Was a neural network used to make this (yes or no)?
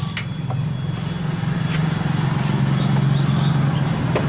no